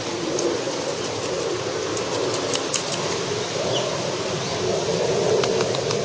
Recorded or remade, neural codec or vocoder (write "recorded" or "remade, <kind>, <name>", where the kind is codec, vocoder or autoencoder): recorded